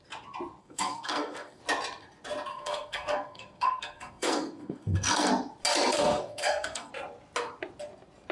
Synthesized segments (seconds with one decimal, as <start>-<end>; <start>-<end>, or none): 0.6-1.6; 2.5-5.3; 5.9-6.9